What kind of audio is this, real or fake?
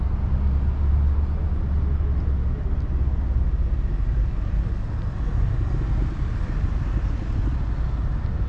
real